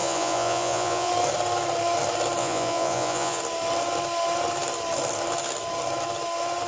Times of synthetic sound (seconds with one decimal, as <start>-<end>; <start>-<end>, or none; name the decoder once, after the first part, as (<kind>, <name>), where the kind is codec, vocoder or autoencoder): 0.0-1.1 (vocoder, Vocos); 2.4-3.4